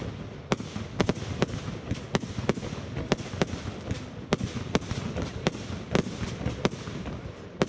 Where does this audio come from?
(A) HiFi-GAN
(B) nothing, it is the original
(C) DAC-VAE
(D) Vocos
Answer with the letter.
B